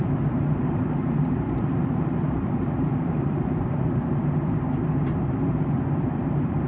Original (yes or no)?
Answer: no